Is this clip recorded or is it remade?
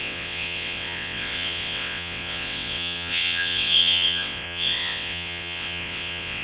remade